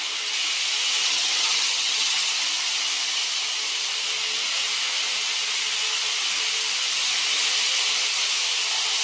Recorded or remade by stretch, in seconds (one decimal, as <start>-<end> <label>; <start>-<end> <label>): 0.0-1.0 recorded; 1.0-2.3 remade; 2.3-9.0 recorded